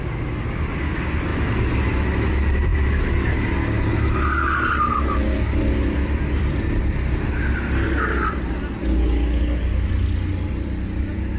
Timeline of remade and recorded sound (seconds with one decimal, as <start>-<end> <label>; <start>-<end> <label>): 0.0-11.4 recorded